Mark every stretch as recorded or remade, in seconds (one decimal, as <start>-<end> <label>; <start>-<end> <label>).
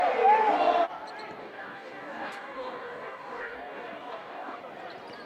0.0-1.4 recorded; 1.4-4.6 remade; 4.6-5.3 recorded